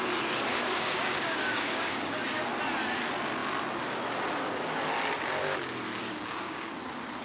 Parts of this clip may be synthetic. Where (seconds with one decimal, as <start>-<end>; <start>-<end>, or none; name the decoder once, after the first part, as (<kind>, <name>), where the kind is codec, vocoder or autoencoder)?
0.5-2.4 (codec, DAC); 6.0-6.7

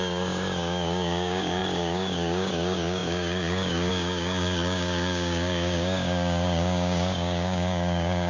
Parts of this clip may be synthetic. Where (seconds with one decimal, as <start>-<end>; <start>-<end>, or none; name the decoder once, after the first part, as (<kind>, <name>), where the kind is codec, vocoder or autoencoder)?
0.0-8.3 (codec, DAC)

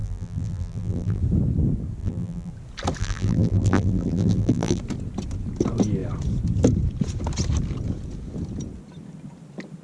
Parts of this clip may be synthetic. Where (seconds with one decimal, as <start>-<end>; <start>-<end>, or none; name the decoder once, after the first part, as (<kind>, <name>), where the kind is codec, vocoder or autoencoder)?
0.0-1.2 (vocoder, BigVGAN v2); 2.0-2.5; 3.0-4.8

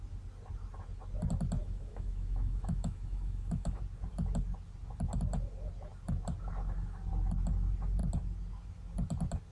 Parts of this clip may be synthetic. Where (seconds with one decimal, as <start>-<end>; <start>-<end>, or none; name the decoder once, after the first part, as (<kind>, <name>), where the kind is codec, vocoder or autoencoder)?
1.6-3.8 (autoencoder, DAC-VAE)

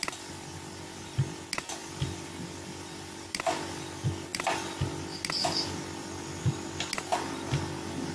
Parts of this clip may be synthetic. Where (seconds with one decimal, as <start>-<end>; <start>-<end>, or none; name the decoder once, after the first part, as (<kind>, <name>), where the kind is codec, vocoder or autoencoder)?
none

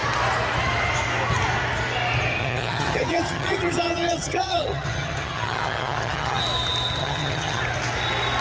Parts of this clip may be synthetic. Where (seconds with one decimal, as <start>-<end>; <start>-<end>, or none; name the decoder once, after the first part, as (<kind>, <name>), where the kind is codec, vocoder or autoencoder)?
2.4-6.4 (vocoder, HiFi-GAN); 7.0-7.6

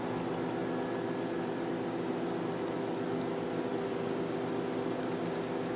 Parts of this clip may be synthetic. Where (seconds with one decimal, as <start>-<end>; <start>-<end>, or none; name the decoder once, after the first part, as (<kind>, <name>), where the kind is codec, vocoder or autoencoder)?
none